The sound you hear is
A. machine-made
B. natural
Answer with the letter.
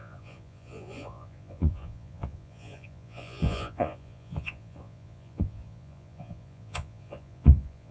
A